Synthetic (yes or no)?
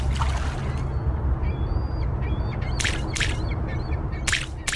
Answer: no